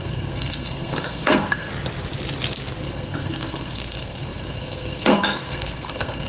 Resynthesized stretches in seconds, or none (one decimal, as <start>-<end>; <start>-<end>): 0.0-1.7; 2.8-6.3